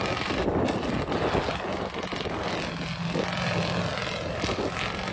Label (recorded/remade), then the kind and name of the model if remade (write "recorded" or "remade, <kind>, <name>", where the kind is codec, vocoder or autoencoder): recorded